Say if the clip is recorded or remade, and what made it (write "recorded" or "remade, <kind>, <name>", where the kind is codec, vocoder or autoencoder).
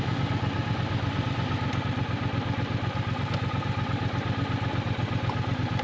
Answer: recorded